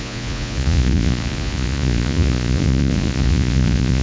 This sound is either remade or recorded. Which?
remade